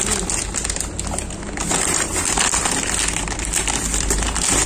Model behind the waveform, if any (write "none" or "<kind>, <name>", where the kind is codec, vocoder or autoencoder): none